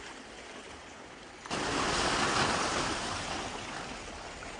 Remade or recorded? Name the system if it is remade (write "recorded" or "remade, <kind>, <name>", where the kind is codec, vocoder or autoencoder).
recorded